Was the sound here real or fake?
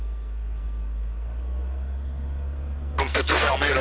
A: fake